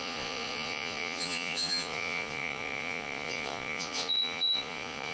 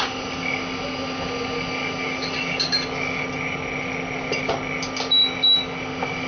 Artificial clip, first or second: first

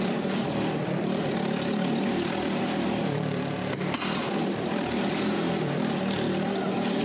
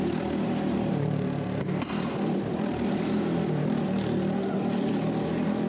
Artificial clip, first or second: first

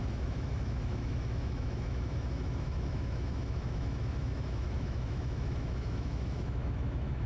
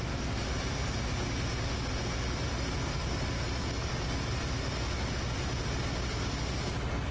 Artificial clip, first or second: first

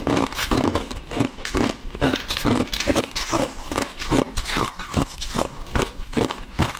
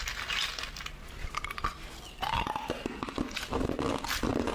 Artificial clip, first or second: first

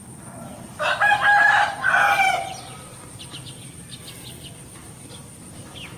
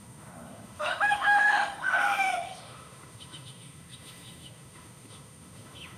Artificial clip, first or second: second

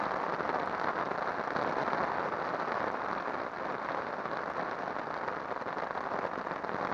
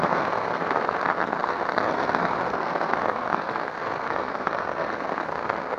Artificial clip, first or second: second